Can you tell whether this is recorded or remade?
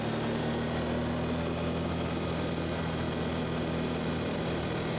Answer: recorded